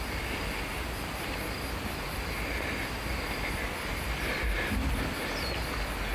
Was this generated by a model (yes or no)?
no